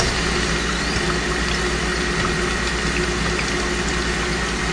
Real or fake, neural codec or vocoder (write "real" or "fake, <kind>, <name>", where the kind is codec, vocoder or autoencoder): real